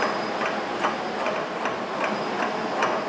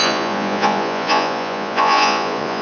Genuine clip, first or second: first